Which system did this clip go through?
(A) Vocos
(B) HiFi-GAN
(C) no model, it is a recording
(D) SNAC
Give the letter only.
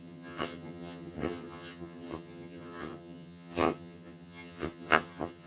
B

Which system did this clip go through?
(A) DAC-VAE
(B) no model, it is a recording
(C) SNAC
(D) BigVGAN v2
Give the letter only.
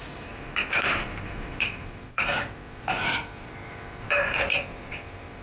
D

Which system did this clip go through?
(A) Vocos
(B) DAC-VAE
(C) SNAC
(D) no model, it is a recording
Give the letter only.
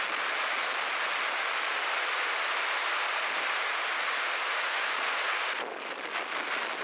D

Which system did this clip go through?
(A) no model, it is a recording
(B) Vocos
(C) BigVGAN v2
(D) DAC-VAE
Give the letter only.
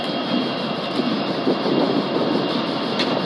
A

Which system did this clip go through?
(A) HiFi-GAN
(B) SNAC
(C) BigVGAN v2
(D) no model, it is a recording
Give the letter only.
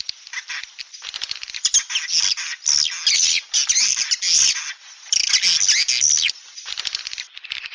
D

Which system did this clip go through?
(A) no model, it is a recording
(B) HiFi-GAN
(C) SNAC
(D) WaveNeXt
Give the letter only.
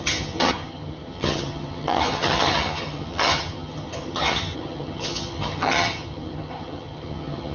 B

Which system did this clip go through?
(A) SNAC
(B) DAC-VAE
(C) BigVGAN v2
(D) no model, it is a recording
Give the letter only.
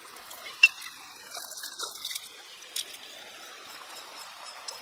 D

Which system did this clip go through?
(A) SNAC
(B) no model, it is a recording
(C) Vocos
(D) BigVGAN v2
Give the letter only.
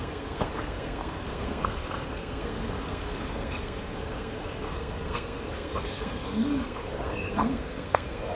A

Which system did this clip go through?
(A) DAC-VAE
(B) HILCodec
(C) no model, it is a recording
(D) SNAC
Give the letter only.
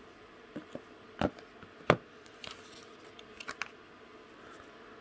C